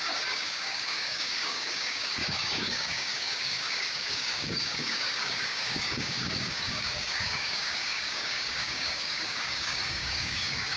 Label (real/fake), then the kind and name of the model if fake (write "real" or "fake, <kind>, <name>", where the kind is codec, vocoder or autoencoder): fake, codec, DAC